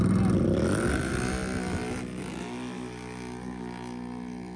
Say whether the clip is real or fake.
real